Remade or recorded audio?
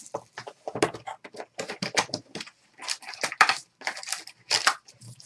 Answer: recorded